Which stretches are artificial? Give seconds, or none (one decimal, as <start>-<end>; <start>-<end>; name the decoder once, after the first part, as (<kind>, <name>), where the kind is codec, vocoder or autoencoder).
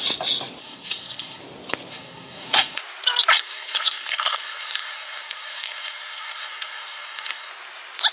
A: 0.6-1.4 (codec, SNAC); 1.9-2.8; 3.3-7.5